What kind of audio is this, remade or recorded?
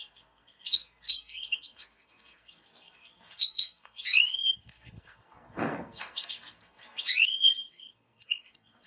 remade